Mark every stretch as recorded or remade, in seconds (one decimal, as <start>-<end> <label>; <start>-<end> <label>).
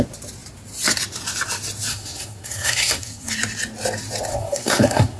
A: 0.0-1.9 recorded; 1.9-3.3 remade; 3.3-4.3 recorded; 4.3-5.2 remade